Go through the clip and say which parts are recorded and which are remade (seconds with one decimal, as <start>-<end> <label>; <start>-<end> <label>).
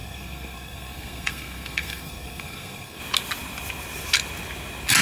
0.0-3.0 remade; 3.0-5.0 recorded